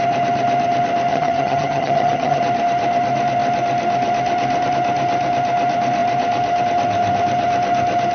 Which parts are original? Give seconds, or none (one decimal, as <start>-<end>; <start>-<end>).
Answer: 0.0-1.1; 2.4-8.1